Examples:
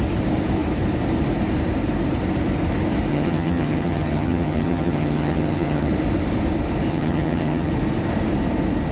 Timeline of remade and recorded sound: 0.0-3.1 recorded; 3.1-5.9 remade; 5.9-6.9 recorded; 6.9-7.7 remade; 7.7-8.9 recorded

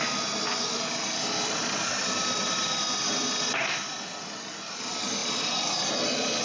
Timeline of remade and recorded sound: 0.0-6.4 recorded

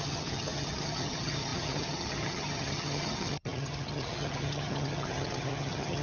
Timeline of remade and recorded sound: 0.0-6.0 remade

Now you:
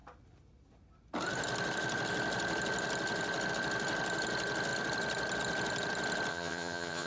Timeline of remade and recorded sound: 0.0-6.3 recorded; 6.3-7.1 remade

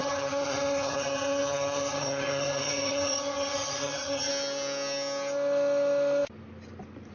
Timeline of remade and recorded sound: 0.0-4.3 remade; 4.3-7.1 recorded

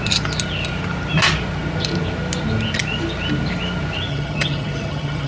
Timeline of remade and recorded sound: 0.0-4.1 recorded; 4.1-5.3 remade